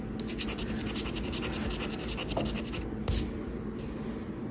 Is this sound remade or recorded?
recorded